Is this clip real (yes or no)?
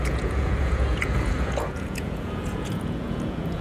no